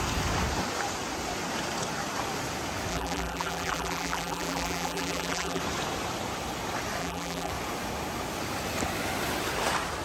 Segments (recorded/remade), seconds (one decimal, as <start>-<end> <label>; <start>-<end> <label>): 0.0-2.9 recorded; 2.9-5.6 remade; 5.6-7.0 recorded; 7.0-7.5 remade; 7.5-10.0 recorded